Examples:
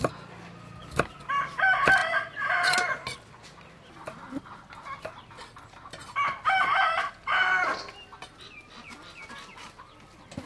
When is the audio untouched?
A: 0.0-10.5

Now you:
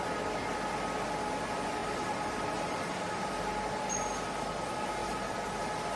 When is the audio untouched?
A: 0.0-1.8; 3.2-5.0; 5.6-6.0

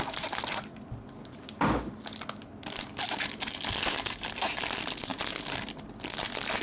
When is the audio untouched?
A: 0.0-6.6

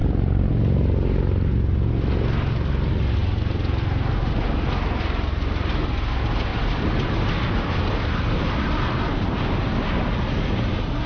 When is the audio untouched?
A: 0.5-6.5; 9.9-11.1

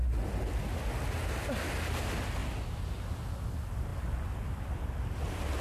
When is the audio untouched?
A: 0.0-5.6